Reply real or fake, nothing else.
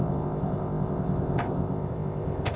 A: fake